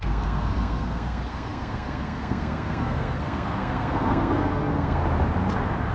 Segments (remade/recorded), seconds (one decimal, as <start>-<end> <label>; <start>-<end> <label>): 0.0-5.0 remade; 5.0-5.9 recorded